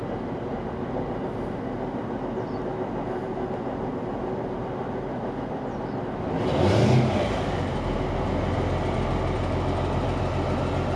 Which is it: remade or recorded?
recorded